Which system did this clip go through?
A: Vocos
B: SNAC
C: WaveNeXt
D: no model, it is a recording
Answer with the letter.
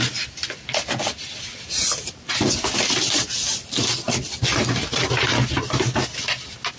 D